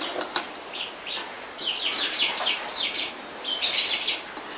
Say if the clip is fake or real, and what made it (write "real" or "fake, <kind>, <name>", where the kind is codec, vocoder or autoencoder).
real